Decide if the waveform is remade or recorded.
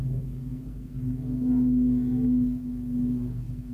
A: remade